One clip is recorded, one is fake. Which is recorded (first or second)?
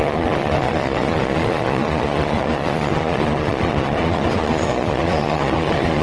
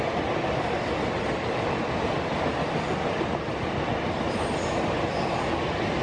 second